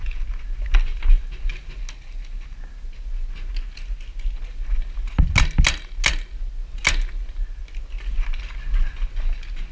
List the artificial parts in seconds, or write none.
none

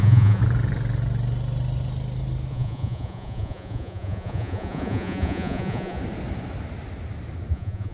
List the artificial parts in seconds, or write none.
0.0-0.4 (vocoder, Vocos); 2.5-6.0; 7.5-7.9